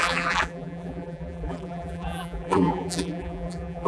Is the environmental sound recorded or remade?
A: remade